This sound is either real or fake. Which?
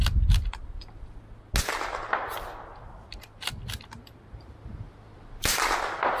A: real